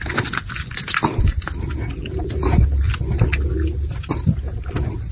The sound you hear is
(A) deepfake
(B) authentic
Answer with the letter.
B